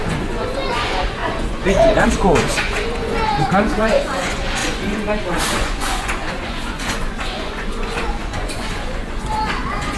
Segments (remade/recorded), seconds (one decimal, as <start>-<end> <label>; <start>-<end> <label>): 0.0-10.0 remade